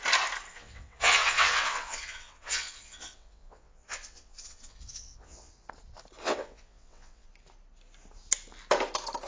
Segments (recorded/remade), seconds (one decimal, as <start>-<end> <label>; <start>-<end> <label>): 0.0-0.5 recorded; 0.5-5.5 remade; 5.5-6.2 recorded; 6.2-7.3 remade; 7.3-9.3 recorded